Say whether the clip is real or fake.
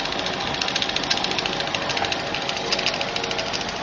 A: real